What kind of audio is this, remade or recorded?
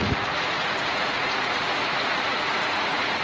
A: remade